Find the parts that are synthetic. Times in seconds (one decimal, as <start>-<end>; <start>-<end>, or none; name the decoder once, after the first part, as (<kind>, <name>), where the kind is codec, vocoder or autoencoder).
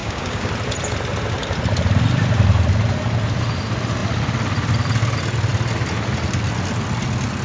0.0-0.5 (codec, DAC)